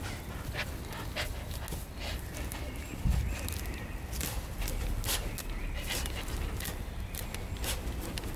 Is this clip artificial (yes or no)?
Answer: no